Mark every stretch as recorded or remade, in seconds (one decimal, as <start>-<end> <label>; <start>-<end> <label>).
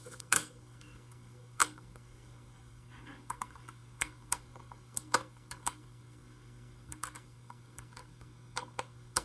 0.0-9.2 remade